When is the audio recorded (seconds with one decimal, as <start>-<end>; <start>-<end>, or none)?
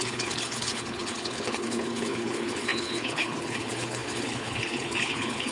none